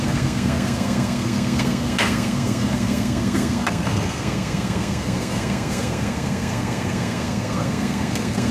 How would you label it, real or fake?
fake